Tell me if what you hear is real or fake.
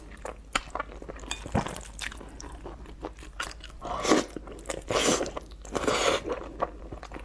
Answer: real